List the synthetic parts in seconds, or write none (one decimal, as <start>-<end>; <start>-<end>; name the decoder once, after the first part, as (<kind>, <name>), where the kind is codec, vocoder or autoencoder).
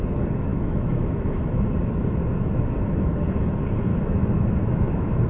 0.5-1.8 (autoencoder, DAC-VAE); 3.9-5.3